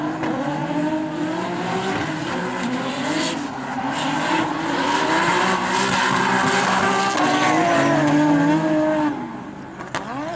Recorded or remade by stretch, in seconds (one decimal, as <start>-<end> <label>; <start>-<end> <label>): 0.0-10.4 recorded